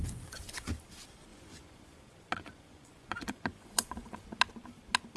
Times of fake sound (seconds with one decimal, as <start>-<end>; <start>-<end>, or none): 0.0-0.7; 1.3-4.4